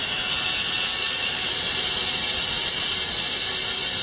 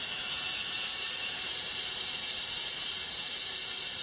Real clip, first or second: first